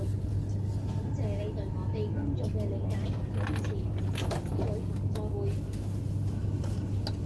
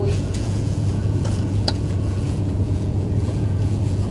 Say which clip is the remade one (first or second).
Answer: second